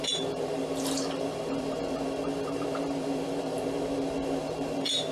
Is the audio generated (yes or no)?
yes